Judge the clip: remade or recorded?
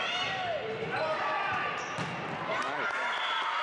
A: recorded